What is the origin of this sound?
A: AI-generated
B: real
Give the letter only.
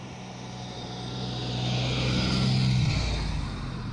B